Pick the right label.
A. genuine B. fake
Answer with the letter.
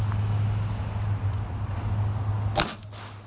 A